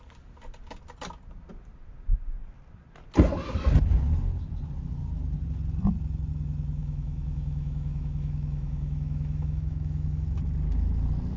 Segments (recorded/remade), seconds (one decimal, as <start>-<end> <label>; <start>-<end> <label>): 0.0-6.8 recorded; 6.8-10.4 remade; 10.4-11.4 recorded